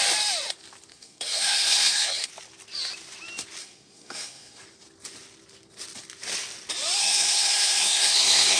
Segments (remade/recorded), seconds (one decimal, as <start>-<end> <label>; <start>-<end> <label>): 0.0-0.9 recorded; 0.9-2.3 remade; 2.3-3.6 recorded; 3.6-4.6 remade; 4.6-7.0 recorded; 7.0-8.6 remade